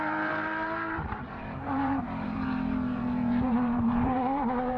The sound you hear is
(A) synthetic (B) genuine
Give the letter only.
A